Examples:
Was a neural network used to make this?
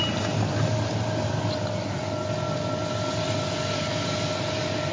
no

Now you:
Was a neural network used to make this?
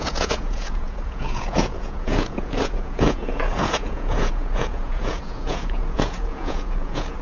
yes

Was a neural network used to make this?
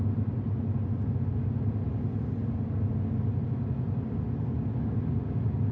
no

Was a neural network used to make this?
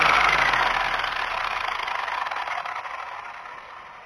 no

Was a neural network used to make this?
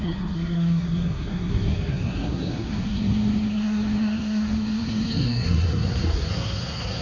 yes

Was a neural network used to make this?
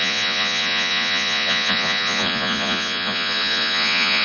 yes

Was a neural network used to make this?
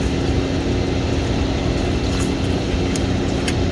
no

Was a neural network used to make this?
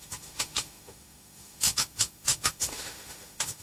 yes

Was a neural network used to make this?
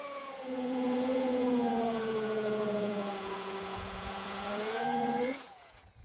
yes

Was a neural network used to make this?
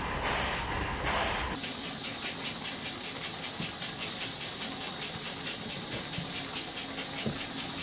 no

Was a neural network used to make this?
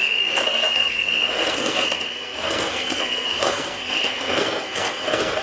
yes